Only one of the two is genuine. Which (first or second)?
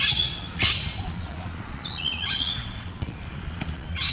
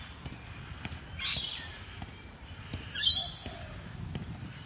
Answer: second